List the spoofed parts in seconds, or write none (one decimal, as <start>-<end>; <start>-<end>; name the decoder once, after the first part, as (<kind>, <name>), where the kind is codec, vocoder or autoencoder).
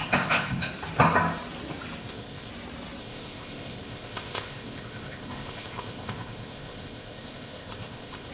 0.0-0.7 (codec, ZipCodec); 2.0-2.5; 3.0-8.3